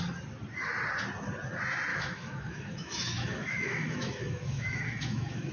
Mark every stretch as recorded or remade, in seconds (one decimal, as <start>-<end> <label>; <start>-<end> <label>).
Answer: 0.0-1.9 recorded; 1.9-5.5 remade